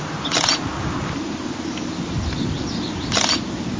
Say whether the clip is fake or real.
real